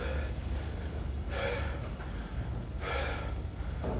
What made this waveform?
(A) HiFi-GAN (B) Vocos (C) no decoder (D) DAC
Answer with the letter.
D